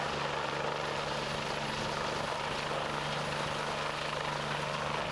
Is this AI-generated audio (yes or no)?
no